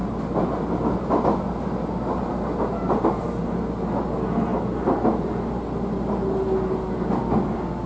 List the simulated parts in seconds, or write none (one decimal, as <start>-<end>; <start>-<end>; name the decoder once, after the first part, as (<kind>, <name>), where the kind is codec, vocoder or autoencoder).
none